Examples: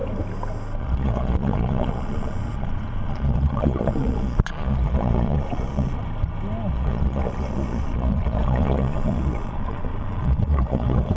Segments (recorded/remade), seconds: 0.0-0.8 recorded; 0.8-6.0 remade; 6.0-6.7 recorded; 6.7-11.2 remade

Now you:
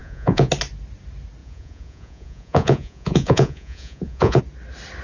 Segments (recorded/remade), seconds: 0.0-0.5 remade; 0.5-1.4 recorded; 1.4-4.4 remade; 4.4-5.0 recorded

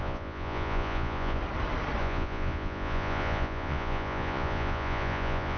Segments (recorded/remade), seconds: 0.0-1.4 remade; 1.4-2.0 recorded; 2.0-5.6 remade

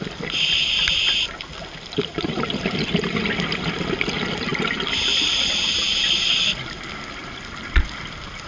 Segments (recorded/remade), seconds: 0.0-8.5 recorded